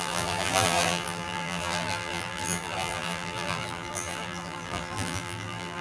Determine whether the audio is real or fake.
fake